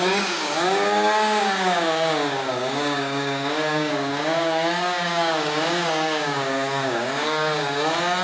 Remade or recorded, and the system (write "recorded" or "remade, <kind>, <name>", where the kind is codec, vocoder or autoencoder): remade, codec, DAC